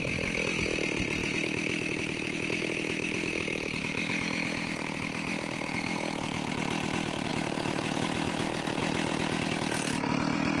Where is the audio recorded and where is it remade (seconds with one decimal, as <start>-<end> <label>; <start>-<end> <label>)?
0.0-1.2 recorded; 1.2-3.3 remade; 3.3-3.8 recorded; 3.8-6.5 remade; 6.5-7.3 recorded; 7.3-8.8 remade; 8.8-10.6 recorded